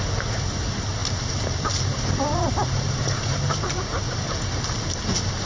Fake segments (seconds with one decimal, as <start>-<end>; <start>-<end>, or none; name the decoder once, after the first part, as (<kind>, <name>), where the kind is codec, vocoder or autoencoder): 1.0-4.3 (vocoder, BigVGAN v2)